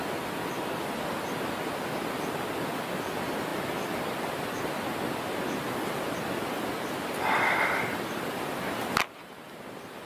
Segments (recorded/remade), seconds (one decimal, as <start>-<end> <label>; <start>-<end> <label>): 0.0-10.1 recorded